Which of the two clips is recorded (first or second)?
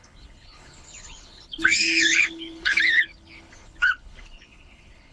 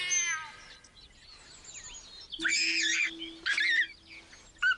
second